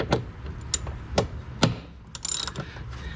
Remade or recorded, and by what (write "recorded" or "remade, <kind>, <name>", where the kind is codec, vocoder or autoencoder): recorded